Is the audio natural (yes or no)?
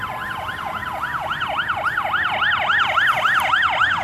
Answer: yes